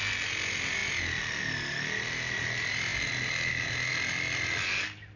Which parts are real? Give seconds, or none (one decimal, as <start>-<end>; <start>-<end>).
0.0-5.2